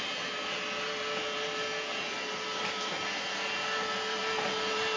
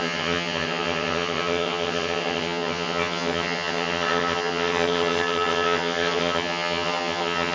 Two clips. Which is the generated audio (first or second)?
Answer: second